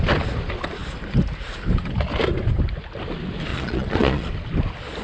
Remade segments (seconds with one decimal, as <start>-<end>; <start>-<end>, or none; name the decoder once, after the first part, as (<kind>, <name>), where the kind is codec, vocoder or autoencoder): 3.5-4.3 (vocoder, Vocos)